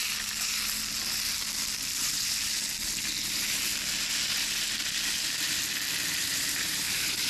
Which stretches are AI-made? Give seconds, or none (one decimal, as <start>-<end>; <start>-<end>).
2.0-2.6; 3.2-3.7; 6.3-7.3

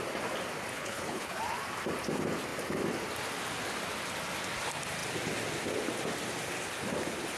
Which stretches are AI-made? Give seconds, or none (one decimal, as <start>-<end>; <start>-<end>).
0.7-1.4

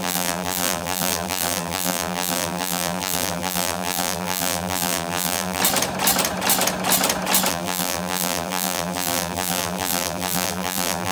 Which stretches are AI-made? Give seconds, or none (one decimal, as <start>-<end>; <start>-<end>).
0.0-5.6; 7.5-11.1

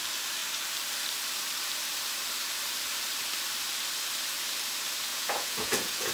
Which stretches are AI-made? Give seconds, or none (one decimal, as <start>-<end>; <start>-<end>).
5.1-6.1

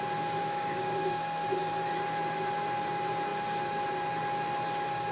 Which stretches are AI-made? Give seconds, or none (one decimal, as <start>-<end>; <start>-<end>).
0.4-1.2

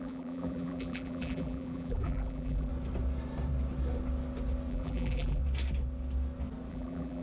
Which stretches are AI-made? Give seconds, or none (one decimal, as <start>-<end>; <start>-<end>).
0.0-2.7; 4.7-5.4; 6.7-7.2

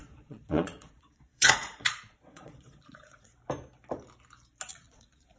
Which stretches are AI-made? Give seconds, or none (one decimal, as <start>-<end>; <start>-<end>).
0.0-3.3; 4.7-5.4

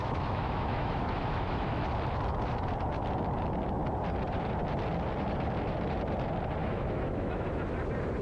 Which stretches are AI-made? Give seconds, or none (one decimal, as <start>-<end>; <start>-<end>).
0.0-1.8; 6.6-7.5